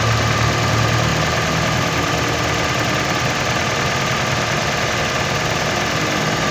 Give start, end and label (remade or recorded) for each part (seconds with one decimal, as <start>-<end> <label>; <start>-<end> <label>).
0.0-6.5 recorded